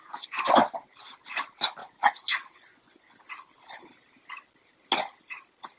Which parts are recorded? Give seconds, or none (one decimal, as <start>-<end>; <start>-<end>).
0.5-1.8; 3.2-5.8